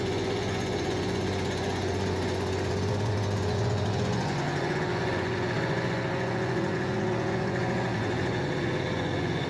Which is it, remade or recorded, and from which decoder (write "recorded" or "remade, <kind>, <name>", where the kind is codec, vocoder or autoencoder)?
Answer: remade, vocoder, Vocos